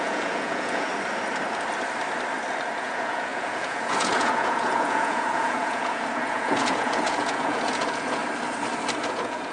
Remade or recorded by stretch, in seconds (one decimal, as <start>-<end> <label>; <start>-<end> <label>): 0.0-0.9 remade; 0.9-2.8 recorded; 2.8-8.2 remade; 8.2-9.0 recorded; 9.0-9.5 remade